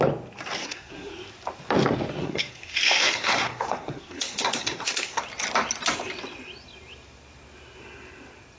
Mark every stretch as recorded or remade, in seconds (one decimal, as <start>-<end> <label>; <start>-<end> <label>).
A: 0.0-0.6 recorded; 0.6-1.1 remade; 1.1-2.2 recorded; 2.2-5.2 remade; 5.2-8.6 recorded